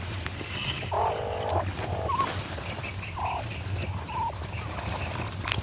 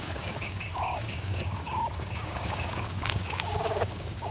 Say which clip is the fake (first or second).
second